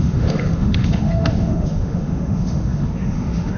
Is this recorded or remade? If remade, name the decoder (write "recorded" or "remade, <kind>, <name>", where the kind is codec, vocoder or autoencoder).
remade, autoencoder, DAC-VAE